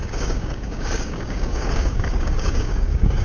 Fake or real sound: fake